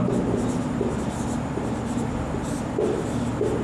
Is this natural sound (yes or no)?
yes